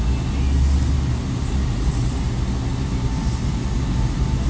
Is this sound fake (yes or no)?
no